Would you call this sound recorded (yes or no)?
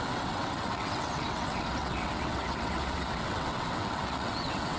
no